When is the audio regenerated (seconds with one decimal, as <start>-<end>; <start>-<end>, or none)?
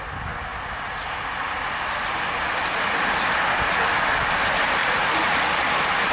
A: 4.8-5.4